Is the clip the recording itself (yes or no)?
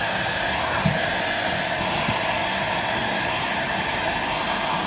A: yes